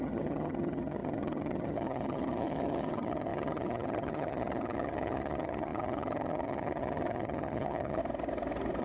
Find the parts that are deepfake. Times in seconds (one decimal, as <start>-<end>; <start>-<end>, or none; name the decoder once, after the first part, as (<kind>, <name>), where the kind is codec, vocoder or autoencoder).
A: 0.0-8.0 (vocoder, HiFi-GAN)